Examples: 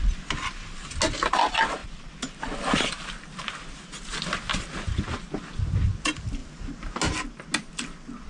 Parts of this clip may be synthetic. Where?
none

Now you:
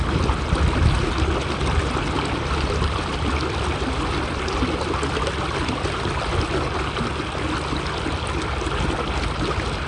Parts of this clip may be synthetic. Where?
none

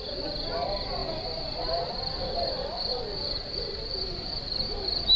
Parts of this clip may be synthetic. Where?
none

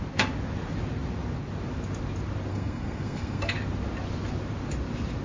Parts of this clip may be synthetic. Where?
2.5-3.5 (codec, SNAC)

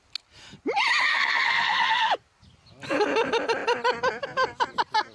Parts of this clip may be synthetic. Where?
1.1-2.1 (codec, SNAC)

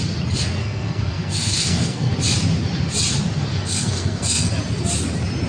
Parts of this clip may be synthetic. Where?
0.6-2.1 (codec, SNAC); 3.5-4.5

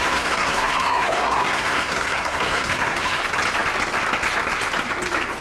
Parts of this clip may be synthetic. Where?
0.0-3.2 (codec, SNAC)